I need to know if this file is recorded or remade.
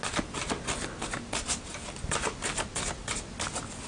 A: recorded